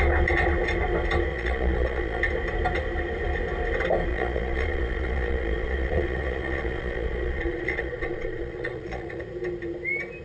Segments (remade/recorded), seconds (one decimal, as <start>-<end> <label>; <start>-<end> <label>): 0.0-1.3 recorded; 1.3-2.2 remade; 2.2-4.1 recorded; 4.1-9.2 remade; 9.2-10.2 recorded